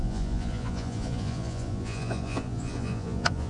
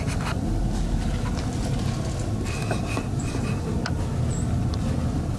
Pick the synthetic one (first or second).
first